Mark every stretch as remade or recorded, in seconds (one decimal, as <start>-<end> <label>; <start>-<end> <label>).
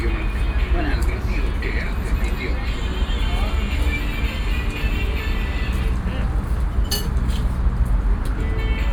0.0-8.9 recorded